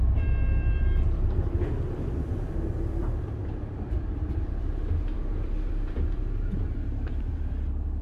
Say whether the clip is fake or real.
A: fake